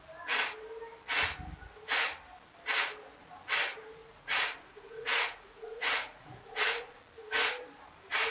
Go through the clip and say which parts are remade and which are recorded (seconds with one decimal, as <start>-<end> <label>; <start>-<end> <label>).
0.0-4.0 recorded; 4.0-7.0 remade; 7.0-8.3 recorded